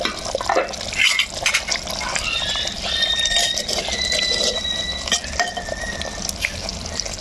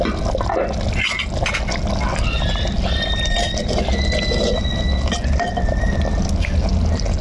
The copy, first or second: first